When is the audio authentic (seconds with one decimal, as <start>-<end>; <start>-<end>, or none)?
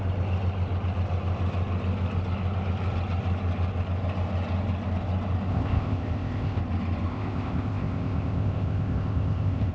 0.0-5.5; 6.6-7.1